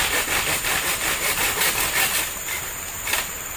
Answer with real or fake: real